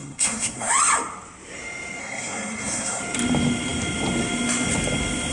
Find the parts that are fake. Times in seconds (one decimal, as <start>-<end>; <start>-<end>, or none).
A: 0.0-0.7; 2.0-3.0